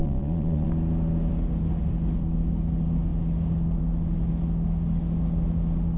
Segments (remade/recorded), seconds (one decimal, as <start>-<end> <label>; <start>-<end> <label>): 0.0-0.7 remade; 0.7-6.0 recorded